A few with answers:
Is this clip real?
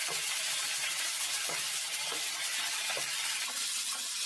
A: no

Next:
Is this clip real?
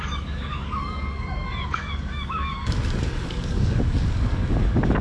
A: no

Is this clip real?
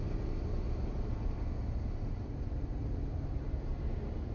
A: yes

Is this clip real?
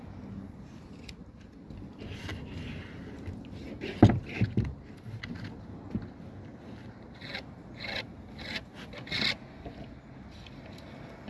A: yes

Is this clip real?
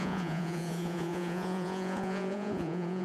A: no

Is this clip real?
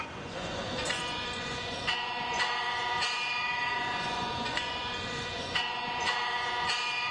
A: no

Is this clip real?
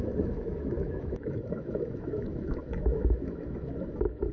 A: no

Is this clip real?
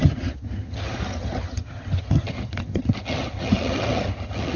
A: no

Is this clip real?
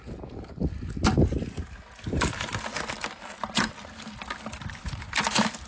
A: yes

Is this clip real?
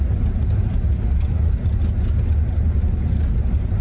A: yes